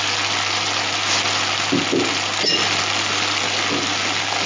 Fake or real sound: real